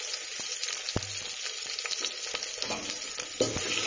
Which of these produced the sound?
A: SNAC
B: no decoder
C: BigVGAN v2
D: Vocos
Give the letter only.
B